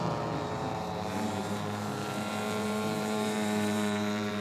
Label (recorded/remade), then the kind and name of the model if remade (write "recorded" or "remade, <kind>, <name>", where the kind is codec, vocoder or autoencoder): remade, vocoder, BigVGAN v2